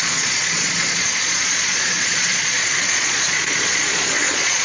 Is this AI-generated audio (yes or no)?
yes